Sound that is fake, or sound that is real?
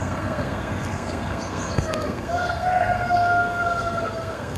fake